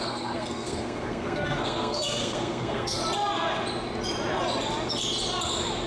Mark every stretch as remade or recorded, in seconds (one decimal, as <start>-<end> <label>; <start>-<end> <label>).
0.0-3.0 remade; 3.0-5.9 recorded